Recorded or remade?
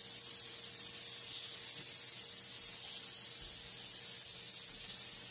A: recorded